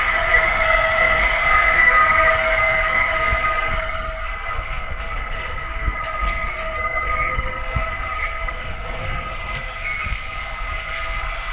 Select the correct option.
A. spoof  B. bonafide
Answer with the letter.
A